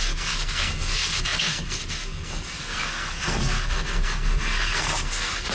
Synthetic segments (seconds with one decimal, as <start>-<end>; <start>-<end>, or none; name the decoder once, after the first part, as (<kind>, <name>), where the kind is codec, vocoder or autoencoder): 0.0-5.5 (codec, SNAC)